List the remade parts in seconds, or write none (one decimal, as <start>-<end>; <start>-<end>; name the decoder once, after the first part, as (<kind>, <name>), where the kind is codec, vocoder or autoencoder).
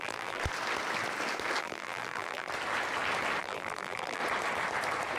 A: 0.0-0.4 (vocoder, BigVGAN v2); 1.6-2.5; 3.4-4.2